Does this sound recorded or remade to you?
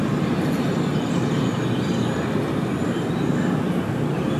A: recorded